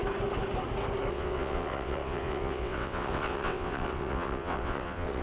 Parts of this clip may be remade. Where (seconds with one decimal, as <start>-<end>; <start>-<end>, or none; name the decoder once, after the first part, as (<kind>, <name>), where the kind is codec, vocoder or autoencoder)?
1.1-5.2 (vocoder, WaveNeXt)